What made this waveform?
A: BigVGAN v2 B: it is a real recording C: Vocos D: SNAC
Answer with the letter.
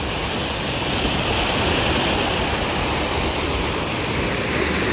B